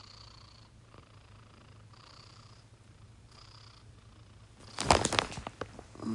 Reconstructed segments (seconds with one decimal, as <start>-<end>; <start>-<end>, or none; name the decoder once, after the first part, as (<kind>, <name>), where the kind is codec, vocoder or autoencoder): 0.0-3.6 (vocoder, BigVGAN v2)